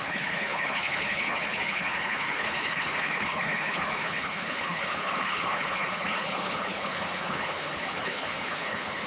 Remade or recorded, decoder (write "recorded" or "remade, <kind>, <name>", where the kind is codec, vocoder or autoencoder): remade, codec, HILCodec